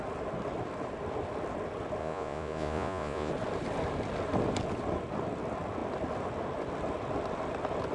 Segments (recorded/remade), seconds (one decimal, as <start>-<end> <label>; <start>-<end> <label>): 0.0-2.0 recorded; 2.0-3.3 remade; 3.3-7.9 recorded